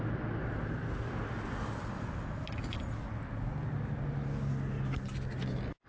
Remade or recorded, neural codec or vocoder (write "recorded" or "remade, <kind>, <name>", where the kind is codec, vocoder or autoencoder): recorded